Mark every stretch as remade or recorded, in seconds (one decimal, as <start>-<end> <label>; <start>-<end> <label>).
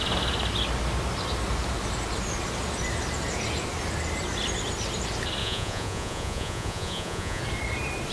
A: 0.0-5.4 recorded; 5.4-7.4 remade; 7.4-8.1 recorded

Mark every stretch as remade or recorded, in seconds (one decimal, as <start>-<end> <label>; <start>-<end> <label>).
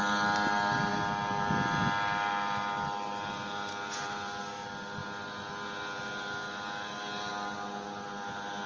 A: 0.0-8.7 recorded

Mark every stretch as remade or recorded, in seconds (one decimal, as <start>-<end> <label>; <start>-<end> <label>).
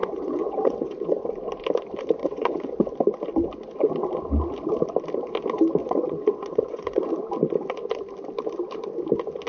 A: 0.0-1.2 remade; 1.2-2.2 recorded; 2.2-2.9 remade; 2.9-5.8 recorded; 5.8-7.1 remade; 7.1-9.5 recorded